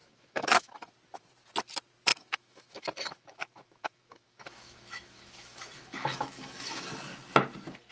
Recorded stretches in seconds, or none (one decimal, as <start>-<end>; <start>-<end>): 0.9-2.1; 6.8-7.9